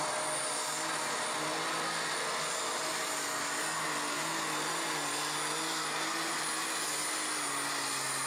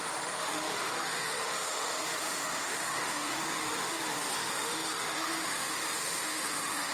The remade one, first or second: second